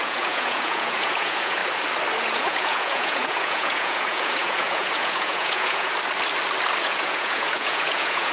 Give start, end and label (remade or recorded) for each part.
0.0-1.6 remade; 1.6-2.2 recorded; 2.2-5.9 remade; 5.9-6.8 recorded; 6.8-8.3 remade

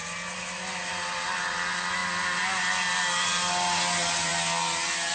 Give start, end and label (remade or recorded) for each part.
0.0-5.1 recorded

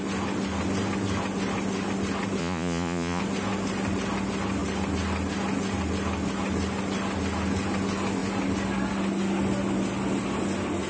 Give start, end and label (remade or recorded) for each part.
0.0-2.4 recorded; 2.4-3.2 remade; 3.2-10.9 recorded

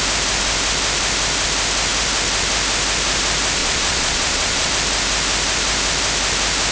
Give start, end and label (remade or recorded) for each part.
0.0-3.6 recorded; 3.6-4.7 remade; 4.7-6.7 recorded